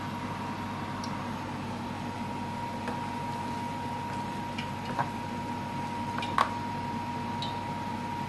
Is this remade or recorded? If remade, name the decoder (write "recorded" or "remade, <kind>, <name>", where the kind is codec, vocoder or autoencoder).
recorded